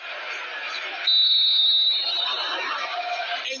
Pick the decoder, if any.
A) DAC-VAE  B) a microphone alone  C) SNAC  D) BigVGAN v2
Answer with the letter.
B